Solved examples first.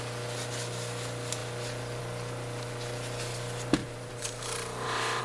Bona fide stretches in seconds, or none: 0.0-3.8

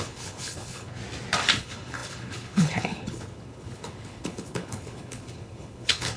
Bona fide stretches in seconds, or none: 1.0-1.6

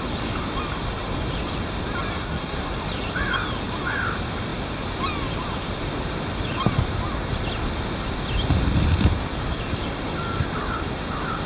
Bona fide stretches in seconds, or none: 0.0-2.2; 2.7-11.5

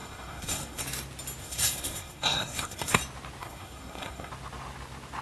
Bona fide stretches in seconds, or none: 0.8-1.4; 3.0-3.4; 4.3-5.2

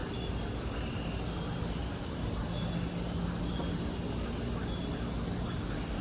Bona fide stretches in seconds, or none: 0.0-6.0

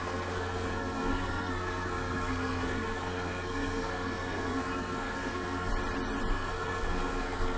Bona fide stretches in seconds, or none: 5.7-6.3

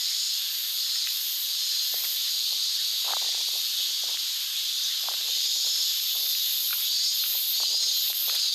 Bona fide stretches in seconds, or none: 2.6-5.0; 6.7-8.5